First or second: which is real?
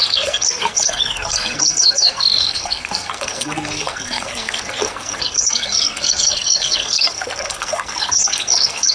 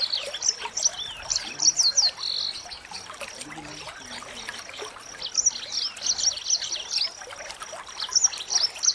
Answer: second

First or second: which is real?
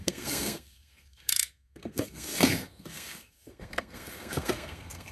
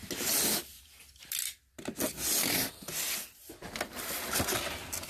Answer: second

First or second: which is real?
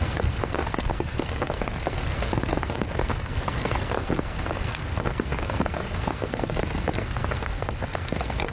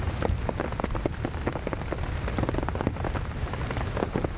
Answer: second